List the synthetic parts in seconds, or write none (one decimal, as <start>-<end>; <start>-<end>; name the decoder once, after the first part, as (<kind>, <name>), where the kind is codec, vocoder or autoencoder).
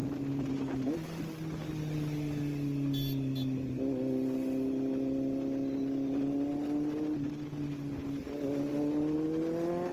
0.0-0.5 (vocoder, BigVGAN v2)